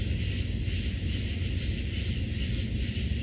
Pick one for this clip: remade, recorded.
recorded